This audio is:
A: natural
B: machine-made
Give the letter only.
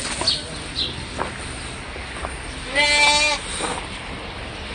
A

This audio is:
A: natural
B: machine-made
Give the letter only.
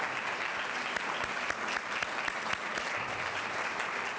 A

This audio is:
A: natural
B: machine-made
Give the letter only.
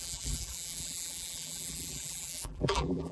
B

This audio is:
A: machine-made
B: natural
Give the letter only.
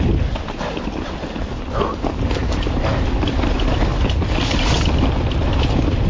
B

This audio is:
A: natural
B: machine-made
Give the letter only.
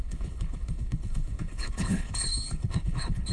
B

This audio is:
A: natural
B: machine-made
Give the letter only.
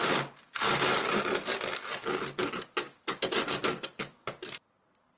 A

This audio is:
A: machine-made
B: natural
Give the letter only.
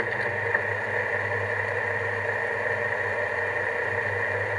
B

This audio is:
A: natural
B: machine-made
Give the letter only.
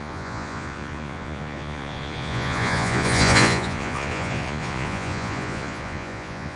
B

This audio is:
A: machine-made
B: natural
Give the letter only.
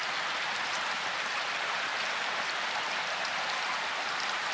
B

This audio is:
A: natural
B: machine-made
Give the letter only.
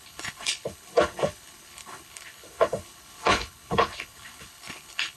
B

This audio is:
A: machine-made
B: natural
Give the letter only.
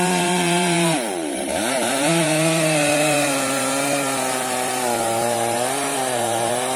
A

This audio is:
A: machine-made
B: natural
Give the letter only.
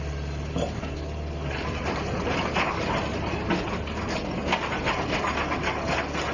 B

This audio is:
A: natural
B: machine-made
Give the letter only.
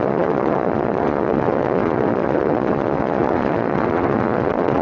B